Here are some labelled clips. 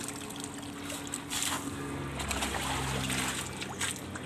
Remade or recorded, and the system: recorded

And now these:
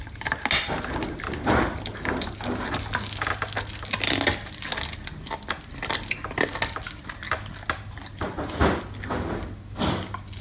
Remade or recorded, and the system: recorded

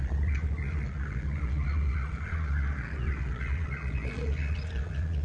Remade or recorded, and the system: remade, vocoder, Vocos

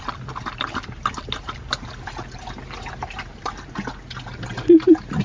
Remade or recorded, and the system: recorded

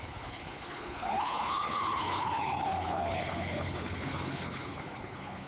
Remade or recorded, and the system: remade, codec, HILCodec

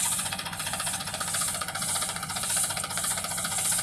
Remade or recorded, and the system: remade, vocoder, Vocos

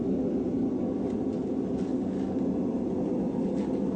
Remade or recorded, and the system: recorded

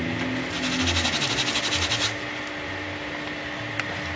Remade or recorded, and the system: recorded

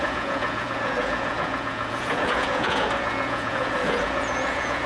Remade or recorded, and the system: remade, vocoder, Vocos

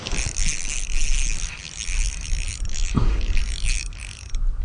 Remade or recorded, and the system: recorded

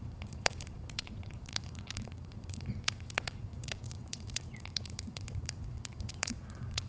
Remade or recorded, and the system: remade, vocoder, Vocos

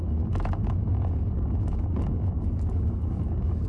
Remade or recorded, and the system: remade, codec, DAC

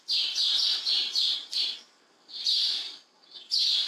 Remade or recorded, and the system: recorded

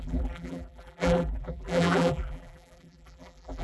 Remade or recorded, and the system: remade, vocoder, BigVGAN v2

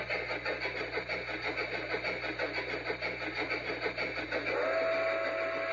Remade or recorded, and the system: recorded